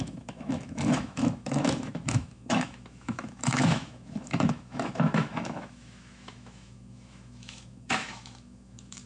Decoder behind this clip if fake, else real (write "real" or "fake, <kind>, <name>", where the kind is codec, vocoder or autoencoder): fake, autoencoder, DAC-VAE